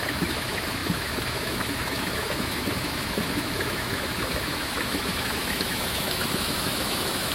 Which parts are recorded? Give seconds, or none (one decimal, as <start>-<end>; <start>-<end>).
none